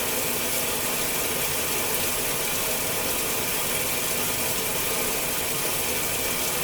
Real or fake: real